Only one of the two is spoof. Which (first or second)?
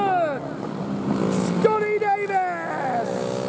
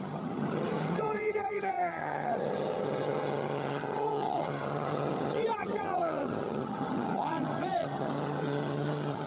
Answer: second